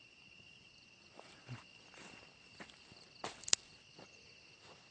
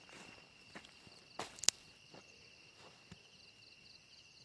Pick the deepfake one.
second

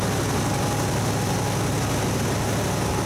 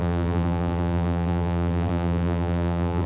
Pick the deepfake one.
second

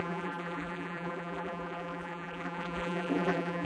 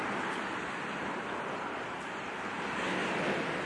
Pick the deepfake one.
first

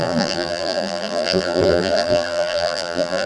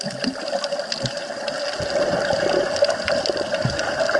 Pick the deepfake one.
first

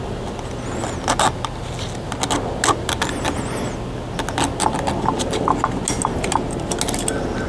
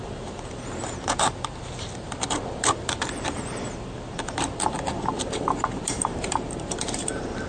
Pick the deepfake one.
second